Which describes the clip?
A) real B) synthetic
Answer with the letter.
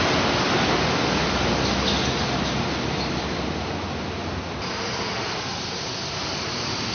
A